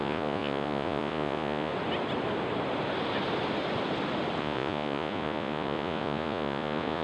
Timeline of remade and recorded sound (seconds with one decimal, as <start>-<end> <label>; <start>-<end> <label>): 0.0-1.7 remade; 1.7-4.4 recorded; 4.4-7.0 remade